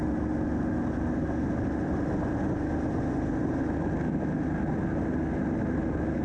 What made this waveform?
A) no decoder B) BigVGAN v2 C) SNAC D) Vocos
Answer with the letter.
A